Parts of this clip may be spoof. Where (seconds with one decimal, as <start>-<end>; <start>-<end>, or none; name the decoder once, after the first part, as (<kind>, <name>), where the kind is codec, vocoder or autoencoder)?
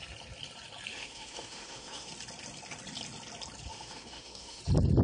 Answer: 0.9-2.1 (autoencoder, DAC-VAE); 3.7-4.6